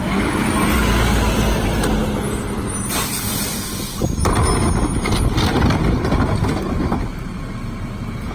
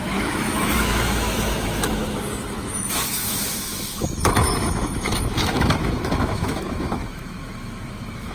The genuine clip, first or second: first